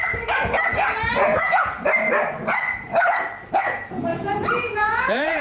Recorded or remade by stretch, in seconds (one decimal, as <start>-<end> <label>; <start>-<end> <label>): 0.0-1.3 recorded; 1.3-1.9 remade; 1.9-4.1 recorded; 4.1-5.4 remade